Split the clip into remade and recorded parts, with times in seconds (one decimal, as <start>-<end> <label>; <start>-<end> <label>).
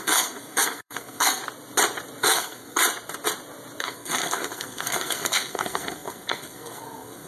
0.0-1.4 remade; 1.4-2.2 recorded; 2.2-2.8 remade; 2.8-3.8 recorded; 3.8-7.3 remade